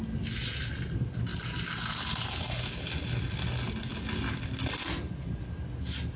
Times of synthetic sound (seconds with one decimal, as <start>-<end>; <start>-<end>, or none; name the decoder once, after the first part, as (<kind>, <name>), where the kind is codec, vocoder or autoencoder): none